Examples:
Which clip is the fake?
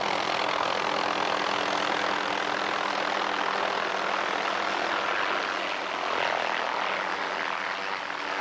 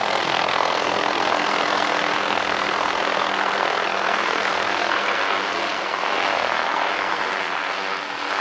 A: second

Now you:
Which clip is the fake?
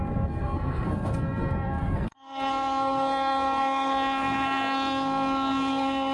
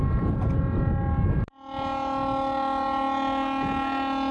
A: first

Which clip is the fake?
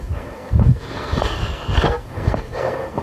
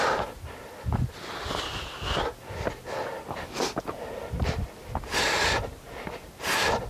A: first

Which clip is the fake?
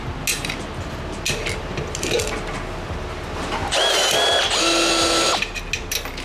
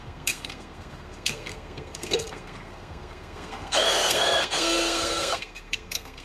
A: second